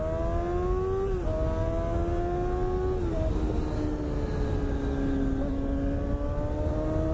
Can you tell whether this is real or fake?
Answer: real